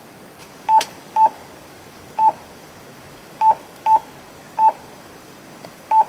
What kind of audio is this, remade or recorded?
remade